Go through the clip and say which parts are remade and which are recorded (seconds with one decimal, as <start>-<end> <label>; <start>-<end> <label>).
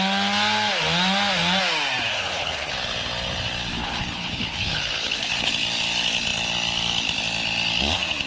0.0-2.1 recorded; 2.1-2.7 remade; 2.7-3.8 recorded; 3.8-5.5 remade; 5.5-8.3 recorded